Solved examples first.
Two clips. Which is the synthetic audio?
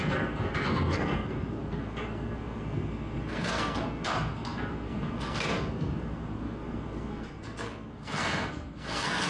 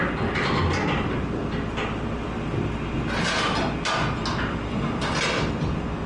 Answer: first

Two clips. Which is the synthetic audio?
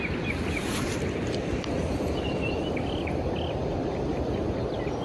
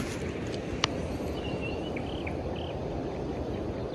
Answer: first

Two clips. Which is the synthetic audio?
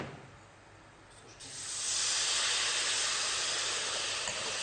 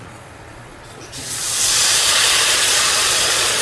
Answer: second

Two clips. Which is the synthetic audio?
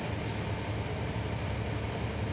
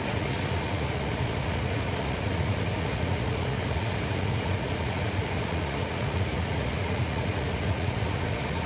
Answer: second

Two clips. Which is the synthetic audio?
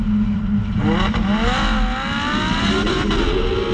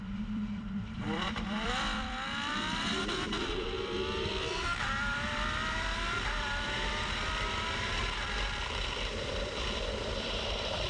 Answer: second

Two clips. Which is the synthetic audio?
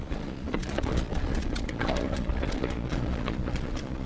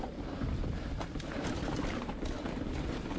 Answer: first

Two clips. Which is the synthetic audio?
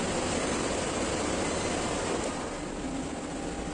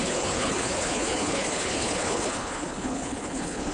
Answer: second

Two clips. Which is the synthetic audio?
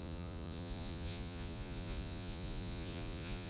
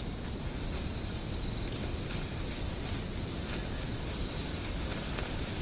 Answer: first